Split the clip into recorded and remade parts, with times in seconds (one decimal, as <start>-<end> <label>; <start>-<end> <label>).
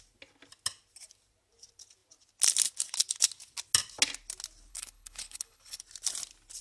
0.0-4.7 recorded; 4.7-5.8 remade; 5.8-6.6 recorded